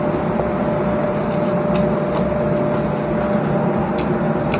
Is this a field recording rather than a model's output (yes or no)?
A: yes